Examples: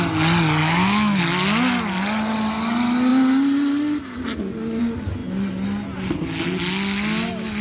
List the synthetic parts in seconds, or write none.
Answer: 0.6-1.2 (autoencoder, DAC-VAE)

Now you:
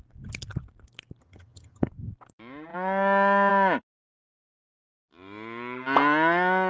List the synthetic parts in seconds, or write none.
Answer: 1.2-1.9 (vocoder, HiFi-GAN)

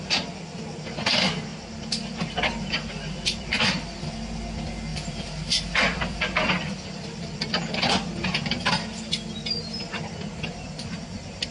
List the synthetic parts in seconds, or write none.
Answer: 1.5-4.0 (vocoder, BigVGAN v2); 4.9-8.7

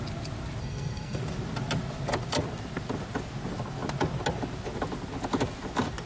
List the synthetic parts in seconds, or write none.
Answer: 0.6-1.2 (codec, SNAC)

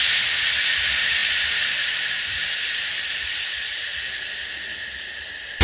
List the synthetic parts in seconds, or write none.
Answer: none

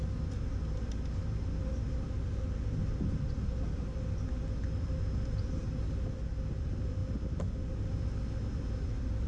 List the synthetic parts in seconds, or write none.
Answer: none